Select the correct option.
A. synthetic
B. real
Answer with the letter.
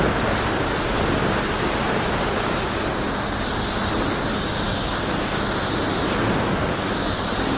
B